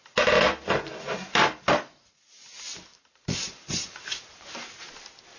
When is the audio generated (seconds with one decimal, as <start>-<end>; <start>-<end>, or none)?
2.9-4.9